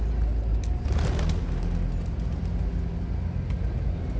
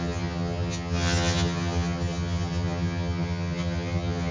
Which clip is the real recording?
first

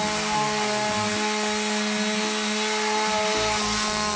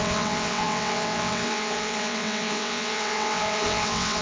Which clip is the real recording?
first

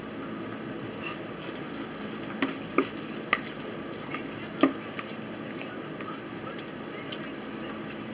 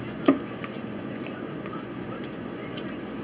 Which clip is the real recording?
first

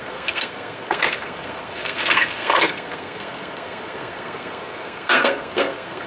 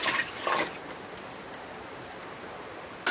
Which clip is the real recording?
second